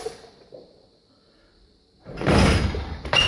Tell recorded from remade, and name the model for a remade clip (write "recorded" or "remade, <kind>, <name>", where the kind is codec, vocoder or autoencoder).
remade, vocoder, BigVGAN v2